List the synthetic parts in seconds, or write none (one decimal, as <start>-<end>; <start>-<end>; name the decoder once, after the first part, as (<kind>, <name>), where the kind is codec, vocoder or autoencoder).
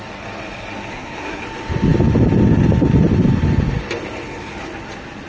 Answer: 0.9-1.4 (codec, SNAC)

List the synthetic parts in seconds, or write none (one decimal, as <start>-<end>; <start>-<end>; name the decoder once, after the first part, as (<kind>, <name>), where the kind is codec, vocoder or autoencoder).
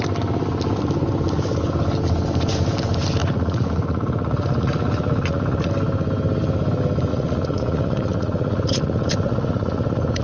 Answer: 3.2-5.7 (vocoder, Vocos); 7.1-10.2